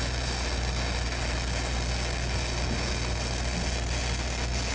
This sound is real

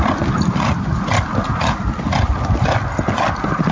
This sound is real